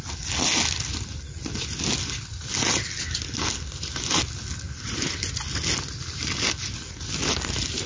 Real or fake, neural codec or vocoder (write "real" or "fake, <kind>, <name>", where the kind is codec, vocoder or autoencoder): real